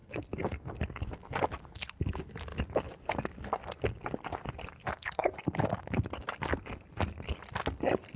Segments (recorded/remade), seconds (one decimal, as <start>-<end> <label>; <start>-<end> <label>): 0.0-8.2 recorded